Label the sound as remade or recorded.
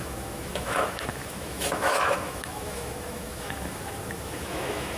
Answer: remade